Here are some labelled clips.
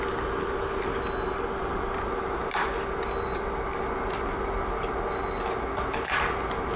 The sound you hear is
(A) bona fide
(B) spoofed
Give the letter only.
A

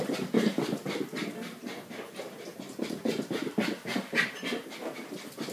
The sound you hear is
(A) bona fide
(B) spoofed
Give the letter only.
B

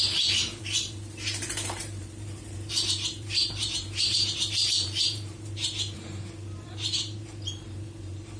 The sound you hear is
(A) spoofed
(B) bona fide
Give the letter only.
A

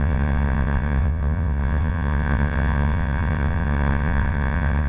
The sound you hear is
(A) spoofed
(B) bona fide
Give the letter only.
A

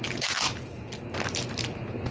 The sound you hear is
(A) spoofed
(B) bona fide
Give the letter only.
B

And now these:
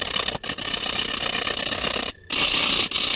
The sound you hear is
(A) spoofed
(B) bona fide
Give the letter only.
B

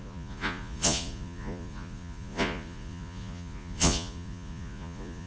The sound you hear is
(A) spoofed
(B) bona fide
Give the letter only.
A